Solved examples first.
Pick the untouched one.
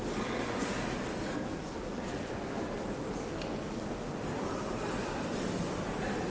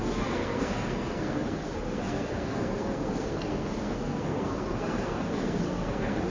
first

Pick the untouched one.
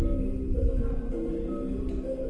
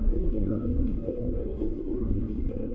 first